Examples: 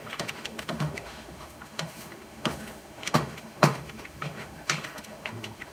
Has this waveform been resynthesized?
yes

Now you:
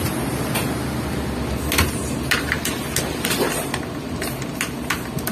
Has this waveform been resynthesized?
no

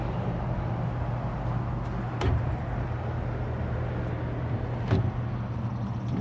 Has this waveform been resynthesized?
no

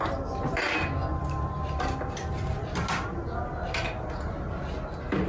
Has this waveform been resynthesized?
no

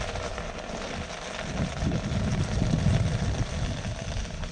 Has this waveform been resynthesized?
no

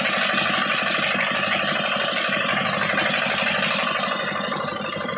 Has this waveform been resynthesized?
no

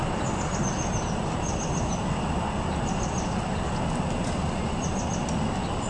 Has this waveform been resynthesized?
no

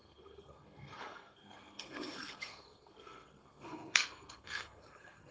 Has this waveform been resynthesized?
yes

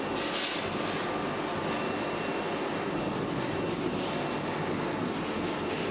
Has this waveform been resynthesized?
no